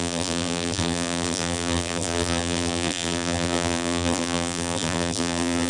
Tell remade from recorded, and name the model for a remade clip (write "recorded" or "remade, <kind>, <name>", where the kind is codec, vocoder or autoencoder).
remade, vocoder, BigVGAN v2